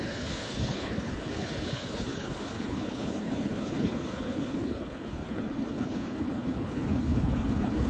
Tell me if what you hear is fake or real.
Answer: fake